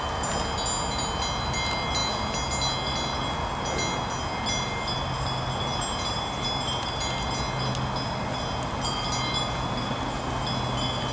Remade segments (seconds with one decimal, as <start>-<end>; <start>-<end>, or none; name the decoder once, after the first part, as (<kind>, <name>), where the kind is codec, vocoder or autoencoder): none